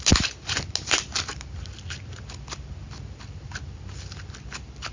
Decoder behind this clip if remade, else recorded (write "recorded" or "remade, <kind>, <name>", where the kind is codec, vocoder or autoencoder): recorded